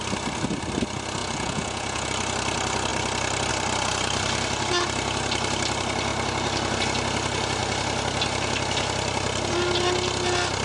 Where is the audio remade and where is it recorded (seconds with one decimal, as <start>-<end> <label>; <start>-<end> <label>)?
0.0-1.2 recorded; 1.2-2.1 remade; 2.1-10.6 recorded